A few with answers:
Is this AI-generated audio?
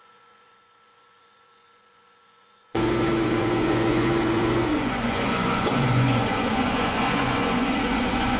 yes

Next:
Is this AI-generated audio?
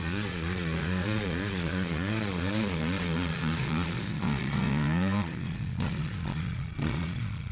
yes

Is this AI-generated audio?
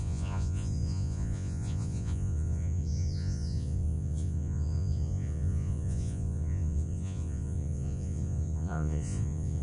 yes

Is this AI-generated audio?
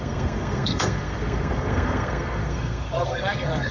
yes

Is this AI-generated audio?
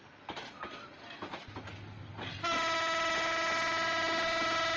no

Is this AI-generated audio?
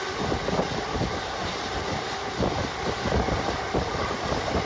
no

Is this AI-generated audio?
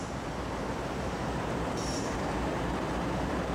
yes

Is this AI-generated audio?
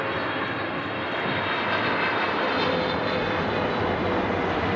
no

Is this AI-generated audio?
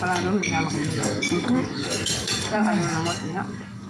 yes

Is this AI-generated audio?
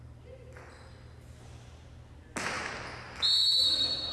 no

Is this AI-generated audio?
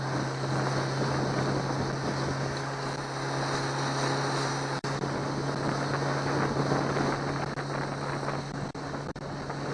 no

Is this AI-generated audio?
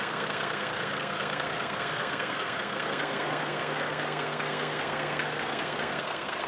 yes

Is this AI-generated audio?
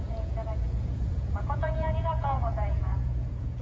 yes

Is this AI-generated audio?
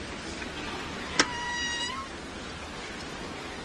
no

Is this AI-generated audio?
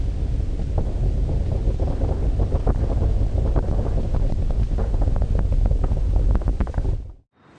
no